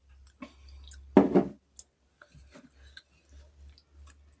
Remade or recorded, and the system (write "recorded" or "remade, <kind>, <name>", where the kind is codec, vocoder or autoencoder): recorded